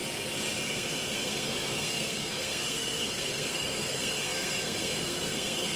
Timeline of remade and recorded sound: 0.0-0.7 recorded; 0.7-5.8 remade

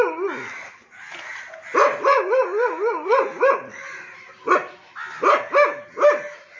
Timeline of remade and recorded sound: 0.0-6.6 recorded